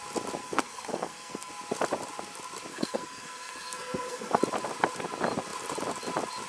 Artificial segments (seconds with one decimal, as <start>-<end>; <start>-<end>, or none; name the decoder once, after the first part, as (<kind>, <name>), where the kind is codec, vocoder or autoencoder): 0.4-1.5 (codec, SNAC); 2.7-4.4